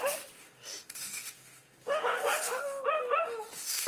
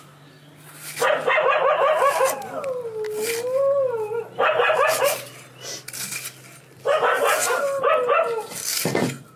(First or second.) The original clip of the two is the second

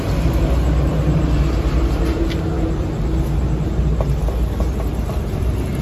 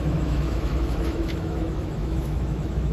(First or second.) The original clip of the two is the first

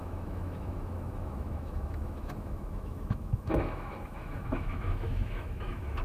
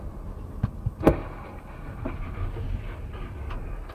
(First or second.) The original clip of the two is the second